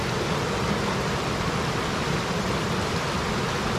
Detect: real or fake real